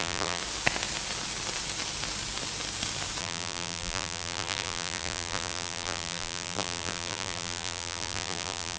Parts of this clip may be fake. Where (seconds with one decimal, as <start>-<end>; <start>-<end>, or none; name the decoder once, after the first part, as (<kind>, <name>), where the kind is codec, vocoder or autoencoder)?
0.0-0.4 (vocoder, BigVGAN v2); 3.2-8.8